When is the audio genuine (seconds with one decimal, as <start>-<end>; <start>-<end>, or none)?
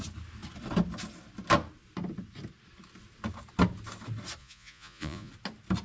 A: 0.0-4.4; 5.3-5.8